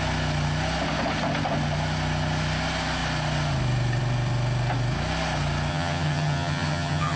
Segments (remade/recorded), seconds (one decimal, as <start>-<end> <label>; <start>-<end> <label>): 0.0-5.7 recorded; 5.7-7.2 remade